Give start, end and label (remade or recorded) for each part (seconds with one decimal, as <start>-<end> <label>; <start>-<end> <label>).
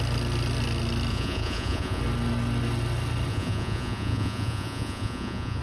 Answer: 0.0-1.1 recorded; 1.1-2.0 remade; 2.0-3.3 recorded; 3.3-5.6 remade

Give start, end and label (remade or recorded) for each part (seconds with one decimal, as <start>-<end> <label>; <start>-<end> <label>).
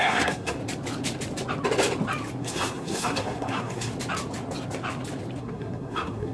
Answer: 0.0-0.6 remade; 0.6-2.4 recorded; 2.4-3.9 remade; 3.9-5.4 recorded; 5.4-6.3 remade